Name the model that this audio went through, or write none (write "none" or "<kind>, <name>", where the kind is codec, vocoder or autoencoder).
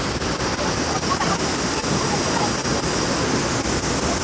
none